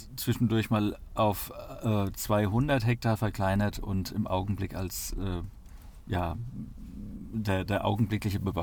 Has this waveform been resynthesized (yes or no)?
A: no